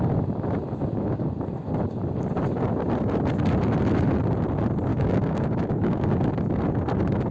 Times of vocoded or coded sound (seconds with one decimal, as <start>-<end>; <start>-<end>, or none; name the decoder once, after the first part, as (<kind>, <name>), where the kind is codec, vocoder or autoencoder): 4.9-6.1 (codec, DAC)